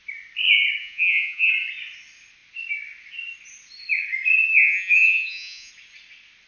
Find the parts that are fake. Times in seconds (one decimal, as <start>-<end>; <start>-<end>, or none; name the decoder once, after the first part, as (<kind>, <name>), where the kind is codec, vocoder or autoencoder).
0.8-1.5 (vocoder, Vocos); 4.5-5.7